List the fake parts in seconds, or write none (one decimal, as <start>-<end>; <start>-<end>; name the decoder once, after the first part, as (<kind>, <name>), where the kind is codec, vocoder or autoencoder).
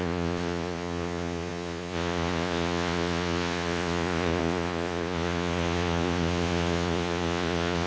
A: 0.0-7.9 (vocoder, Vocos)